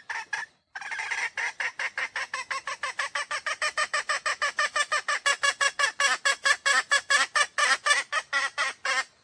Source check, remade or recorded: recorded